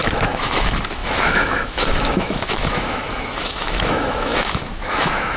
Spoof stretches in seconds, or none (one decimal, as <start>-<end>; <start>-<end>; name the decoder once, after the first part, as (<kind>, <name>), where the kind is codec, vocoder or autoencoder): 0.0-5.4 (autoencoder, DAC-VAE)